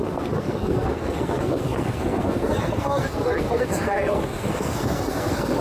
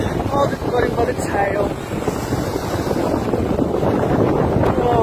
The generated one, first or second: first